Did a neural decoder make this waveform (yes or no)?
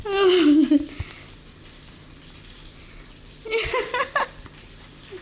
no